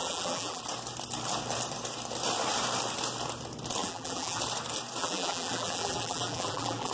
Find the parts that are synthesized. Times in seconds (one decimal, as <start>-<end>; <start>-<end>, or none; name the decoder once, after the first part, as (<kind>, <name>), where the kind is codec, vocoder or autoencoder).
0.0-0.6 (vocoder, BigVGAN v2); 3.8-4.4; 5.0-6.9